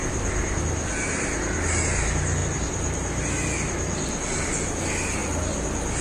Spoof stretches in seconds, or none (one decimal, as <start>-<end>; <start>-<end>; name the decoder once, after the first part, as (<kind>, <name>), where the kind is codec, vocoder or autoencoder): 0.0-0.6 (vocoder, BigVGAN v2); 2.4-3.2